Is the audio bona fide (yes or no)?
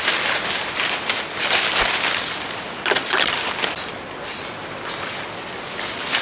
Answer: yes